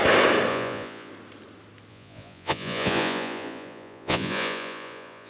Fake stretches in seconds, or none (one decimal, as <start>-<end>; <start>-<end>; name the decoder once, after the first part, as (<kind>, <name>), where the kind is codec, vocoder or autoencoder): 0.5-1.1 (vocoder, Vocos); 1.9-5.3